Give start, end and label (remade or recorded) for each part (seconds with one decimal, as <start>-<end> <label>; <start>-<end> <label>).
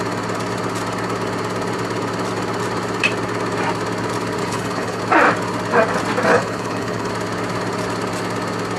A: 0.0-4.4 recorded; 4.4-5.0 remade; 5.0-6.3 recorded; 6.3-7.1 remade; 7.1-8.8 recorded